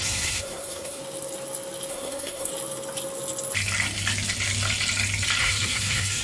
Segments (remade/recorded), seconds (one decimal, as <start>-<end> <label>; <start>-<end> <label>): 0.0-1.0 remade; 1.0-1.9 recorded; 1.9-2.5 remade; 2.5-5.4 recorded; 5.4-6.2 remade